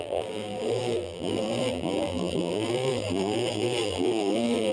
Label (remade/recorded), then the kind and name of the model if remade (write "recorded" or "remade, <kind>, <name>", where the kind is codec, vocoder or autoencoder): remade, vocoder, BigVGAN v2